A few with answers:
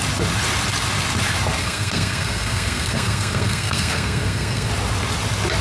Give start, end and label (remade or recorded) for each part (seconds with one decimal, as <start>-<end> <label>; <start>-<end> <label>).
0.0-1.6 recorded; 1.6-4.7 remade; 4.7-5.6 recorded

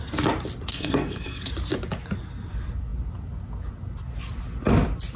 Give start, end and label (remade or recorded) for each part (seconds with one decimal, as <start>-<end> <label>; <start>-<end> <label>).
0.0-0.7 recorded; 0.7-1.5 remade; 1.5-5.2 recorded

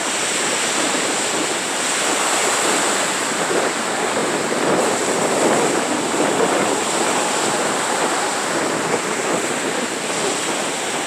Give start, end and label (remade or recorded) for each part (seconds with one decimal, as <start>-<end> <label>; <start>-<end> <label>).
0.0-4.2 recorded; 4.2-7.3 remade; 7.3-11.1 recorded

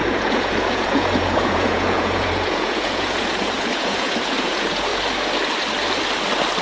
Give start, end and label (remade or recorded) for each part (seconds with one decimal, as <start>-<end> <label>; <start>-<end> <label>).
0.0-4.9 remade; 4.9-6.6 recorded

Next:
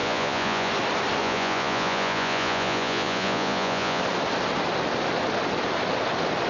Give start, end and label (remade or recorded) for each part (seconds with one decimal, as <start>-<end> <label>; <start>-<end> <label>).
0.0-0.7 remade; 0.7-1.2 recorded; 1.2-4.0 remade; 4.0-6.5 recorded

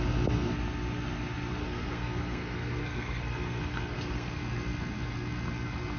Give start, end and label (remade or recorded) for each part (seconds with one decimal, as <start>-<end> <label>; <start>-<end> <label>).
0.0-1.6 recorded; 1.6-4.4 remade; 4.4-6.0 recorded

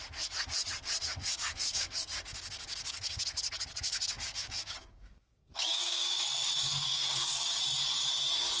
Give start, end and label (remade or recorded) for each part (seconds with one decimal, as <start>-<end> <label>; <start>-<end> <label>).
0.0-1.2 recorded; 1.2-3.2 remade; 3.2-3.9 recorded; 3.9-7.6 remade; 7.6-8.6 recorded